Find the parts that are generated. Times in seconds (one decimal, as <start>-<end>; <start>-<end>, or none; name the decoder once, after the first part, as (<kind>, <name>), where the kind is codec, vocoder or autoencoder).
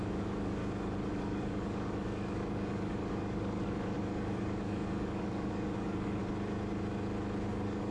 0.0-0.6 (codec, DAC); 1.1-6.2; 7.5-7.9